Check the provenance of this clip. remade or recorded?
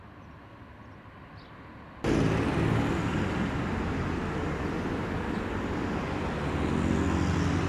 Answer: recorded